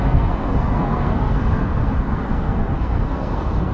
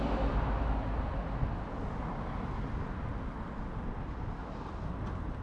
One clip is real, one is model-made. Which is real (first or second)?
second